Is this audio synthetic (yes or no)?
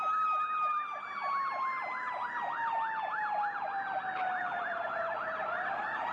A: no